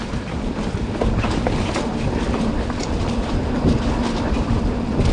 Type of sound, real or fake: fake